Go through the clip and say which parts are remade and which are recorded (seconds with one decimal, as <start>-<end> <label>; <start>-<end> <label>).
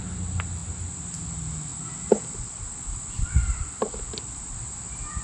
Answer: 0.0-5.2 recorded